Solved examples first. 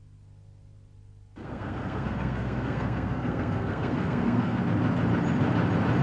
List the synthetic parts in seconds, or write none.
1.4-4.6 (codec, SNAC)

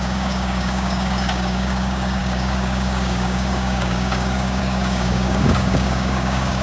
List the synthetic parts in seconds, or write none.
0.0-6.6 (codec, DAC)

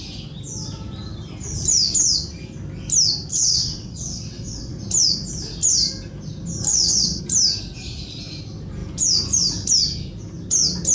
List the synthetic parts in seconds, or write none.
3.3-4.8 (vocoder, WaveNeXt); 6.7-7.2

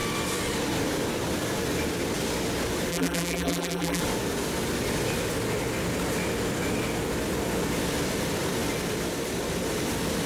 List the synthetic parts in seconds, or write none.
2.9-4.0 (vocoder, BigVGAN v2)